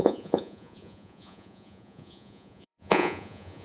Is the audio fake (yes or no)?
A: yes